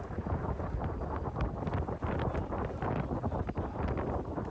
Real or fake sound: real